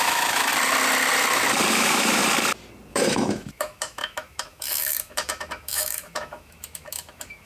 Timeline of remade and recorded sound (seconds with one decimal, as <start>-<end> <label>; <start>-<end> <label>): 0.0-0.5 remade; 0.5-1.7 recorded; 1.7-2.2 remade; 2.2-2.9 recorded; 2.9-7.5 remade